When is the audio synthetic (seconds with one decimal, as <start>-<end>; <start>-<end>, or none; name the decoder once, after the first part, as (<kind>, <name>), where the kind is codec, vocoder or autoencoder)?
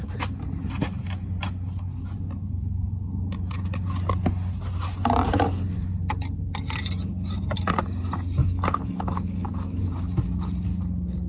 8.4-9.8 (codec, DAC)